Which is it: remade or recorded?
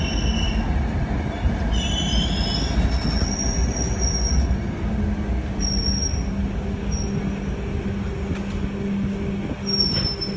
recorded